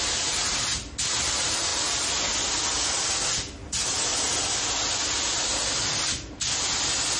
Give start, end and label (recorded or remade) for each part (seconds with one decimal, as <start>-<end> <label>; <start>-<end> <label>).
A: 0.0-7.2 recorded